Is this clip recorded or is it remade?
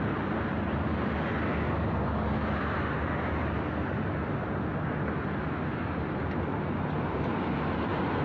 recorded